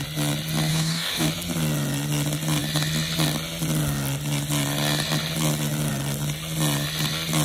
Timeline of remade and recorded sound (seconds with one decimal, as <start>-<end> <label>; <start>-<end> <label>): 0.0-0.7 recorded; 0.7-1.3 remade; 1.3-7.4 recorded